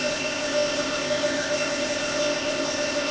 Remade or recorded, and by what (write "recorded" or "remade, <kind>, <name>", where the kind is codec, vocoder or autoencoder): remade, codec, ZipCodec